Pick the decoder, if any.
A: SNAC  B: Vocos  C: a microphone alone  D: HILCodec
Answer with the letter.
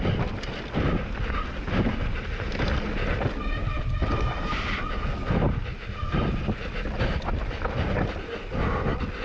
C